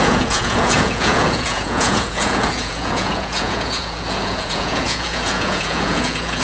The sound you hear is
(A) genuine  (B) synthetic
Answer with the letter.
B